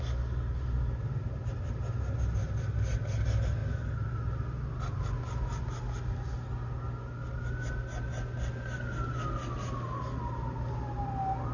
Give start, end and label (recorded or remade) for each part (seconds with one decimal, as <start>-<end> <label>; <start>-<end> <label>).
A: 0.0-11.5 recorded